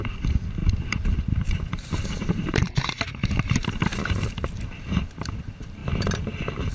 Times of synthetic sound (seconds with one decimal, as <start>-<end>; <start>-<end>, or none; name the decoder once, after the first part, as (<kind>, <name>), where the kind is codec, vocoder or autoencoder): 0.0-5.8 (vocoder, BigVGAN v2)